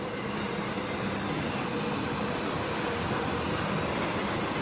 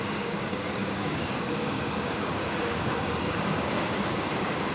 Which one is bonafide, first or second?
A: first